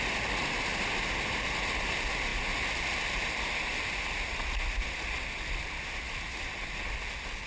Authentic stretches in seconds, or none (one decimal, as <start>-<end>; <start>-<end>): 0.0-7.5